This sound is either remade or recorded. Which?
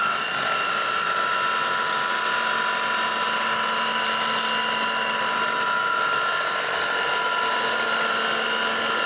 recorded